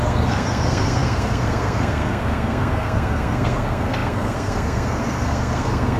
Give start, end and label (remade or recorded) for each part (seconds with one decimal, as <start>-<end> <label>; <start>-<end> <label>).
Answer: 0.0-6.0 remade